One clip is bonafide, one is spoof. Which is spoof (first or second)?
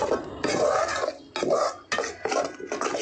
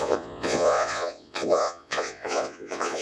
second